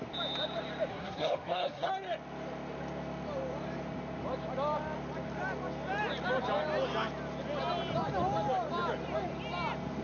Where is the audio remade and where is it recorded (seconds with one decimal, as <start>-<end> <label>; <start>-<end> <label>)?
0.0-0.9 recorded; 0.9-1.9 remade; 1.9-10.0 recorded